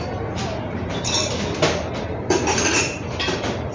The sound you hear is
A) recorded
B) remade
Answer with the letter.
B